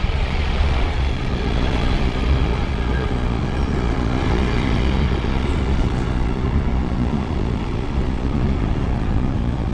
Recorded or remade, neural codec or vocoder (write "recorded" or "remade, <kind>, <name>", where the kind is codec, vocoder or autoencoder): remade, vocoder, Vocos